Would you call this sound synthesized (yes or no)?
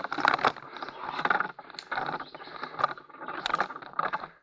no